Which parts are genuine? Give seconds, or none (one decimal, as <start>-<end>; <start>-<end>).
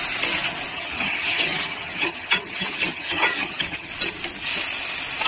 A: 0.0-0.7; 3.9-5.3